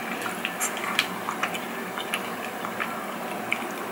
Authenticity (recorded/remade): recorded